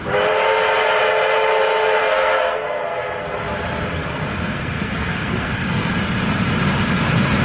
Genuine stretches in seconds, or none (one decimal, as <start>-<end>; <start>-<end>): 0.0-2.0; 3.4-4.0; 5.9-7.4